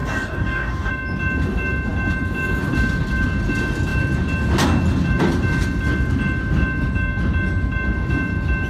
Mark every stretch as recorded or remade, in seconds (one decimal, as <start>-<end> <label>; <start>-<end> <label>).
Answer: 0.0-0.9 remade; 0.9-8.7 recorded